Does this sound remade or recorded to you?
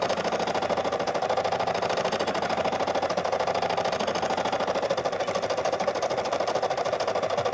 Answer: recorded